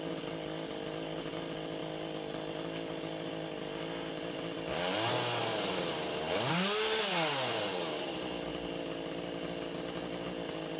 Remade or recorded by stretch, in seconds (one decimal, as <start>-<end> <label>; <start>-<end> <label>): 0.0-10.8 recorded